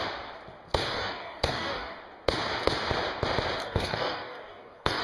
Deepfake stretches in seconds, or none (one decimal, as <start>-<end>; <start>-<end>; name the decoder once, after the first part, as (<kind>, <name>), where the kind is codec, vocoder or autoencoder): 0.8-2.0 (codec, DAC); 3.6-5.0